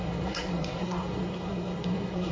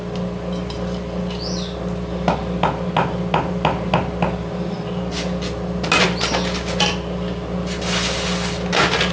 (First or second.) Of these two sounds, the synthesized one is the first